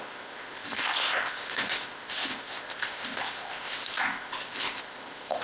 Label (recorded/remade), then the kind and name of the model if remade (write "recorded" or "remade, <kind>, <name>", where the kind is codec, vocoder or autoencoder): remade, codec, ZipCodec